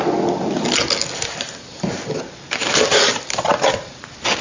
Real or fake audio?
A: real